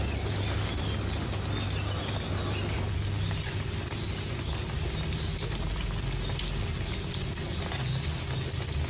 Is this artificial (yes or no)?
no